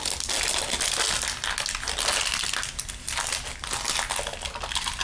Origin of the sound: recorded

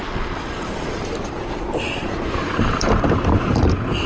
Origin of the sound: remade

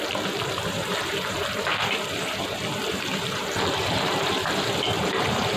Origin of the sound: remade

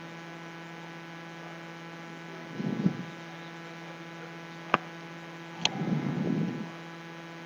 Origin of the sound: recorded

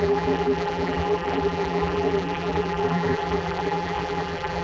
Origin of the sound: remade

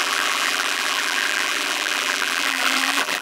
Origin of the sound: remade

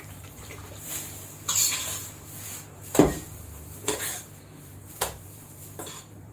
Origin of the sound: remade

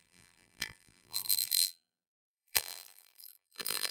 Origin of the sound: remade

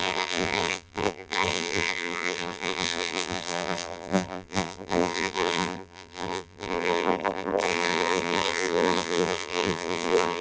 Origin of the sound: remade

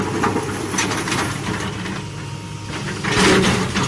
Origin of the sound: recorded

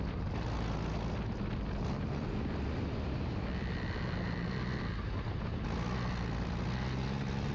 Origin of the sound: recorded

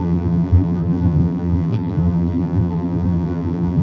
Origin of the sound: remade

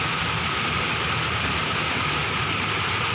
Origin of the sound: recorded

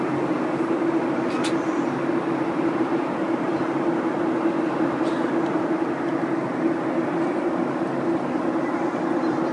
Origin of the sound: recorded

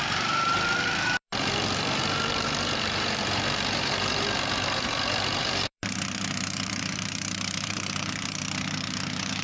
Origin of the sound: remade